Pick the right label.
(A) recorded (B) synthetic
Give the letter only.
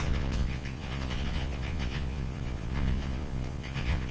B